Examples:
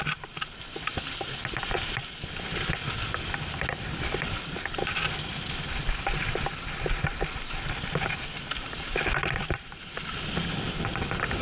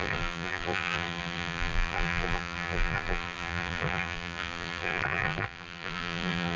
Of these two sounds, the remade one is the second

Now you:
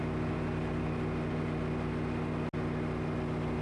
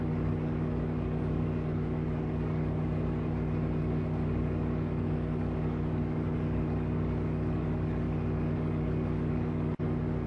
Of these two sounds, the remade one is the second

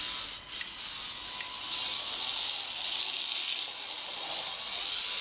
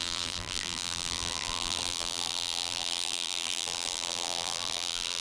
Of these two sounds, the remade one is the second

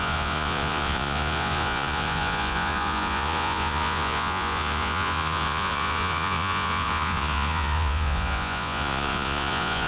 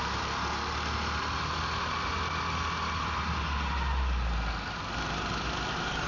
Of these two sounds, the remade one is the first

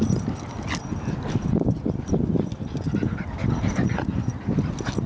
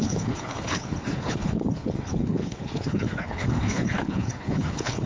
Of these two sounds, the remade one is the second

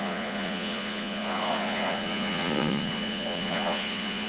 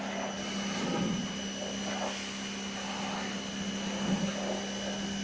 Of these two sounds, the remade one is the first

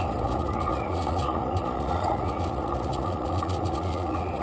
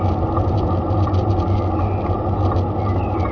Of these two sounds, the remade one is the first